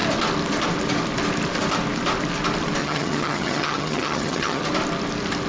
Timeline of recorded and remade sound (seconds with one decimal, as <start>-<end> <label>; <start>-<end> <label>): 0.0-2.8 recorded; 2.8-4.6 remade; 4.6-5.5 recorded